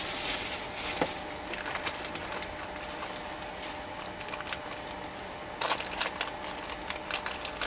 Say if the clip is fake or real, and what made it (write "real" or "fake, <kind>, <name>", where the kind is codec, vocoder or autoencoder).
real